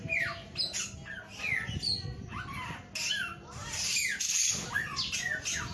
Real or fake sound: real